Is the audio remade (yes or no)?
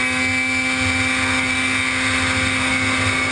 no